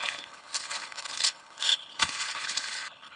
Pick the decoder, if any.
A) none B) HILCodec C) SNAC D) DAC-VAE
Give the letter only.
B